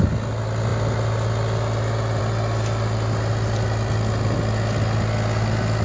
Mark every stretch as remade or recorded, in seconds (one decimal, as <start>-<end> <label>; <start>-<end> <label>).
0.0-5.8 recorded